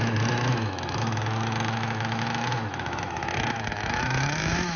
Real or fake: fake